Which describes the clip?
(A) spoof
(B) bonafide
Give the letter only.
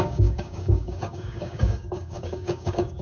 A